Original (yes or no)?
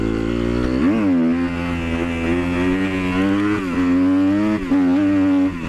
yes